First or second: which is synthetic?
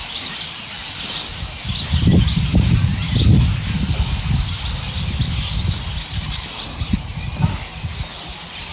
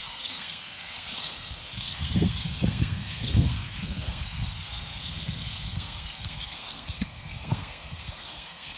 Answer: second